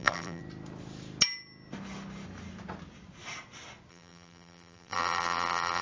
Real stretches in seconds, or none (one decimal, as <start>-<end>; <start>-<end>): 0.4-3.9